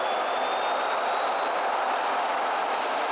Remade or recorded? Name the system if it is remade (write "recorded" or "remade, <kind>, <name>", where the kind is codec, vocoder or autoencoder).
recorded